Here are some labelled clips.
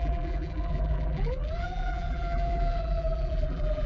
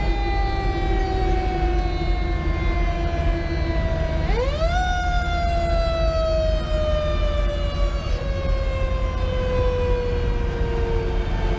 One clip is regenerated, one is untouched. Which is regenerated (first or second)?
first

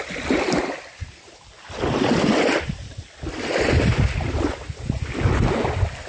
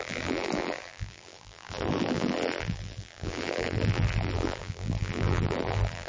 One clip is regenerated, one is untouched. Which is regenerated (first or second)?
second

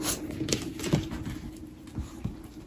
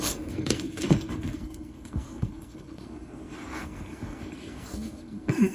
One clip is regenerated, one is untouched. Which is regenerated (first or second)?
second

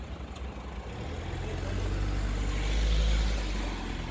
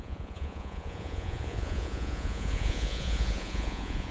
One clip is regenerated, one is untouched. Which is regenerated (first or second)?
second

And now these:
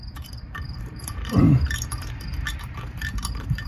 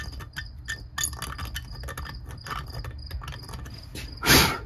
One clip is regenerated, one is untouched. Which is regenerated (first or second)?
first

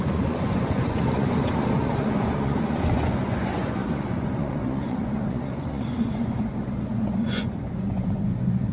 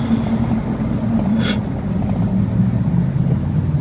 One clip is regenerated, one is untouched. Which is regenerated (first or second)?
first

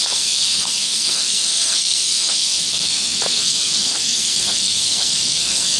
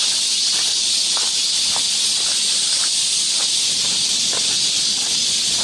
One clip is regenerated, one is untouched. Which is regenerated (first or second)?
first